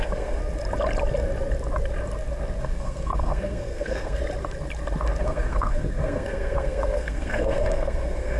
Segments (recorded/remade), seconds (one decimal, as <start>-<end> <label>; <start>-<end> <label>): 0.0-0.4 remade; 0.4-2.6 recorded; 2.6-4.2 remade; 4.2-5.2 recorded; 5.2-8.4 remade